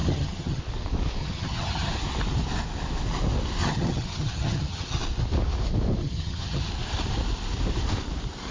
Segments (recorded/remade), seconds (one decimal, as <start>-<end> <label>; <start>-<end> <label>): 0.0-0.6 remade; 0.6-1.2 recorded; 1.2-1.9 remade; 1.9-3.6 recorded; 3.6-5.0 remade; 5.0-6.0 recorded; 6.0-6.7 remade; 6.7-8.5 recorded